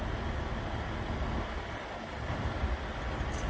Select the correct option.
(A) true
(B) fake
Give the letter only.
A